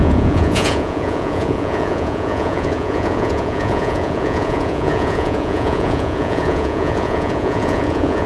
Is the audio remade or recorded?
remade